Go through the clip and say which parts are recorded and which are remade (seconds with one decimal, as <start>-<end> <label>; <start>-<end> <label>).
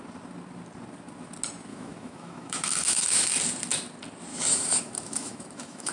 0.0-1.7 recorded; 1.7-3.3 remade; 3.3-4.3 recorded; 4.3-5.9 remade